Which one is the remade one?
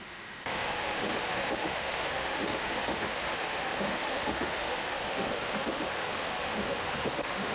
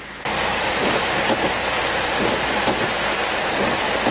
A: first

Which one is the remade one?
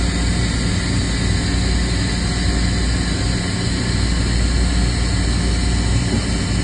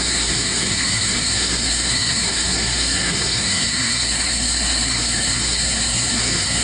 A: second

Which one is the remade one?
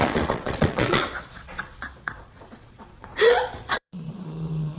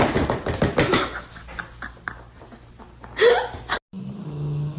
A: first